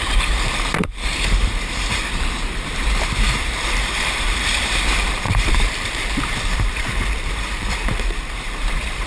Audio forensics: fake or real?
fake